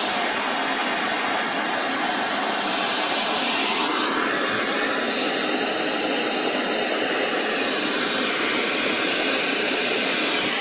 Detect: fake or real real